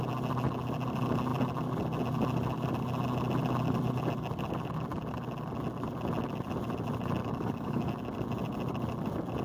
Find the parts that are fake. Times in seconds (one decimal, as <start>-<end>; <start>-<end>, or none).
7.2-7.9